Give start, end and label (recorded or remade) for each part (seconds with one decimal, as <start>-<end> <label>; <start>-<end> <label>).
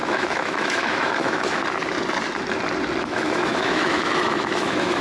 0.0-1.6 remade; 1.6-3.0 recorded; 3.0-5.0 remade